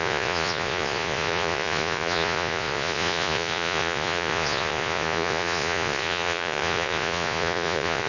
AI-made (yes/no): yes